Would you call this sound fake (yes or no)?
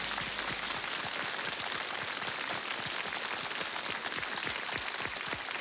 no